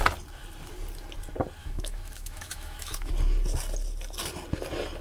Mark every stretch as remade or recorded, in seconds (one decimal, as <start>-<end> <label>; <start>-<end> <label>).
0.0-1.6 recorded; 1.6-3.1 remade; 3.1-5.0 recorded